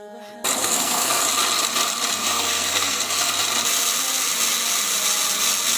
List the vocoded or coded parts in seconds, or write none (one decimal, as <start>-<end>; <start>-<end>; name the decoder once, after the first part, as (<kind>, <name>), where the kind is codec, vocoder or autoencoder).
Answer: 0.6-1.2 (codec, SNAC); 2.2-3.3